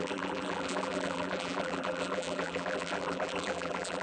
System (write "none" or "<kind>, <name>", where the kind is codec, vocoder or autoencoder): vocoder, BigVGAN v2